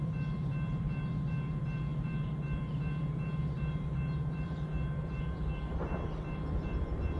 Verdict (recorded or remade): remade